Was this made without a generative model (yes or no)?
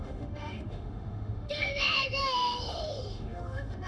no